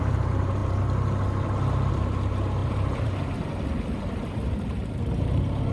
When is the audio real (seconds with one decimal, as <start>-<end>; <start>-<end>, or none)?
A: 0.6-1.9

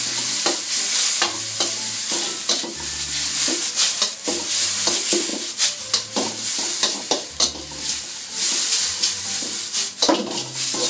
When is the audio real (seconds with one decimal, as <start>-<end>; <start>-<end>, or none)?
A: 0.0-10.9